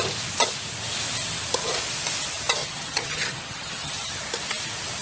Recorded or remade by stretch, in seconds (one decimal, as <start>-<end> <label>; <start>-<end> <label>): 0.0-2.6 recorded; 2.6-4.2 remade; 4.2-5.0 recorded